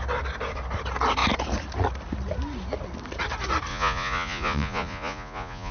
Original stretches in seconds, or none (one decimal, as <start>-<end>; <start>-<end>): 0.0-3.7